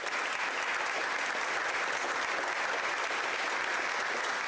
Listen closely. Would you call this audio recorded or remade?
recorded